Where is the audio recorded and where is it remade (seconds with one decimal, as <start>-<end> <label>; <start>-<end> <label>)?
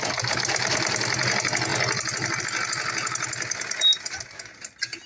0.0-5.1 recorded